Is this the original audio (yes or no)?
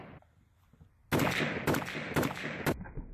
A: yes